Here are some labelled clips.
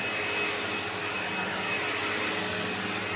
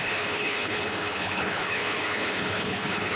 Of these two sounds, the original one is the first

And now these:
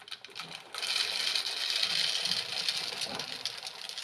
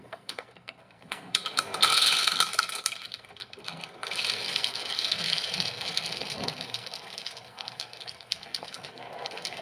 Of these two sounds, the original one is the first